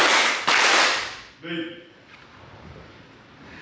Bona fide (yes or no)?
yes